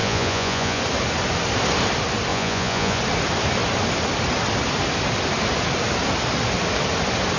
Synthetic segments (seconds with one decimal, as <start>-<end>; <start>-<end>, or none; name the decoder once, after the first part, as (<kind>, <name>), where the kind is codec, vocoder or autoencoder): 0.0-0.8 (vocoder, Vocos); 2.3-3.0